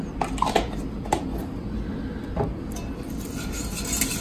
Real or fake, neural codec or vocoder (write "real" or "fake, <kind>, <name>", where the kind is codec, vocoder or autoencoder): real